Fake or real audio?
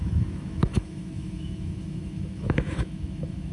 fake